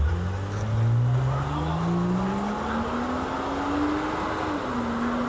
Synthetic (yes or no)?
no